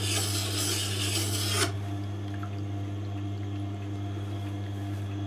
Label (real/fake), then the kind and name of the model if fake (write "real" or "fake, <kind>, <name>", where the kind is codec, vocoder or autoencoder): real